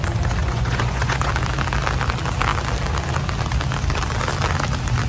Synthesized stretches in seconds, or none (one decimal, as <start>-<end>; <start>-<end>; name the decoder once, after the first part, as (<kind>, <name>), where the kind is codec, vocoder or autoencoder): 0.4-1.3 (vocoder, Vocos)